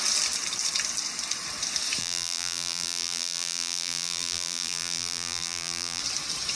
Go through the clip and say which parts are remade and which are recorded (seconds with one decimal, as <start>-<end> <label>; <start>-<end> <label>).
0.0-2.0 recorded; 2.0-6.0 remade; 6.0-6.6 recorded